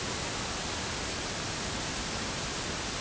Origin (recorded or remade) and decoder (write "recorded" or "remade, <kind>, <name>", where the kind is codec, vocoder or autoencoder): recorded